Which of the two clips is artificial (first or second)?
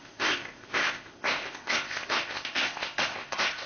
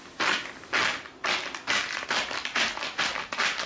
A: first